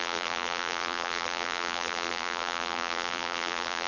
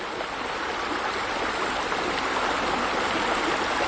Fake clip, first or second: first